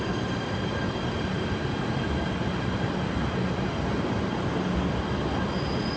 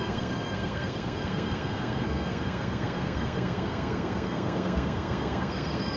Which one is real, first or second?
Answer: first